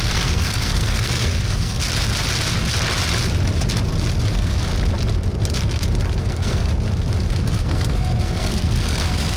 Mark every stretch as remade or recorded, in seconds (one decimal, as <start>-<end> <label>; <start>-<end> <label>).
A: 0.0-1.8 remade; 1.8-4.3 recorded; 4.3-4.7 remade; 4.7-6.2 recorded; 6.2-6.7 remade; 6.7-7.3 recorded; 7.3-9.4 remade